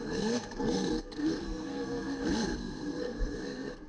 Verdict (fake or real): fake